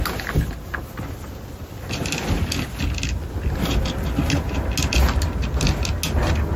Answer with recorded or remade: recorded